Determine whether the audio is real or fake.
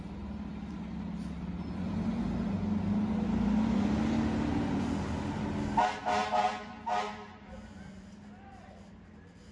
real